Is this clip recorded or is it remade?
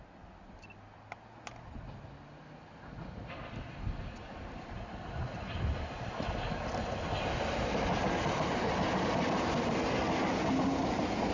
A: recorded